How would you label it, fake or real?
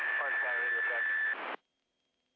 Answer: real